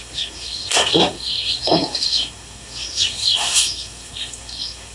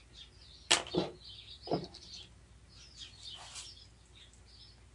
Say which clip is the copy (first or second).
first